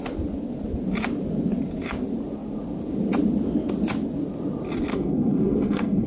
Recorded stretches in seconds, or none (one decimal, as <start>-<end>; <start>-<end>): 0.0-4.9